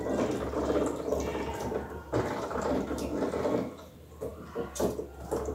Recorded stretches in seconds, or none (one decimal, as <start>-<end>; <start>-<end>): 0.0-1.3; 3.0-5.5

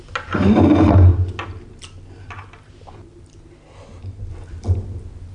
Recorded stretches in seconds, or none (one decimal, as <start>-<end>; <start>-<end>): 0.0-5.3

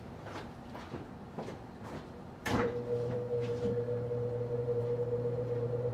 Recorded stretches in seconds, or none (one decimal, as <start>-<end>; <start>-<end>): 0.0-2.4

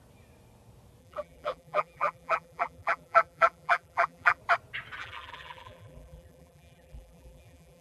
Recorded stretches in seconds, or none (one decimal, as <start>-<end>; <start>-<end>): 0.0-1.0; 4.4-5.0

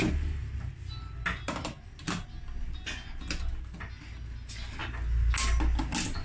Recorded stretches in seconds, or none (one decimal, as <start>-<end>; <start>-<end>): 0.7-6.2